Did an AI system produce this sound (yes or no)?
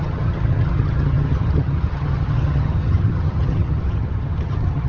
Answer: yes